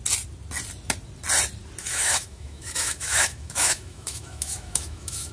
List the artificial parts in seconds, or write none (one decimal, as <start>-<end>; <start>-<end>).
1.8-5.3

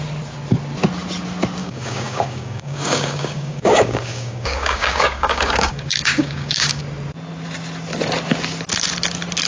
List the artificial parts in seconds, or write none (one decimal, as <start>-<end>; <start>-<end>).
1.6-6.8

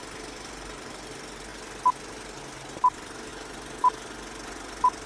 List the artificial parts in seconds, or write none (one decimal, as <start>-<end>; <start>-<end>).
none